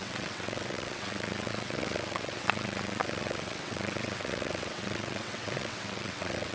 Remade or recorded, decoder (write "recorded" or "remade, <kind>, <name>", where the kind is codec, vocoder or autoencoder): remade, vocoder, WaveNeXt